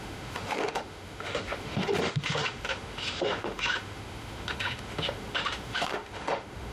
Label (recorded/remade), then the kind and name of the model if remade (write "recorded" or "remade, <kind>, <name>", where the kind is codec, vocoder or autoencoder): remade, autoencoder, DAC-VAE